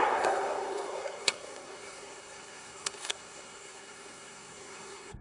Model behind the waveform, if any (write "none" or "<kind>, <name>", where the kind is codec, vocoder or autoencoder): codec, SNAC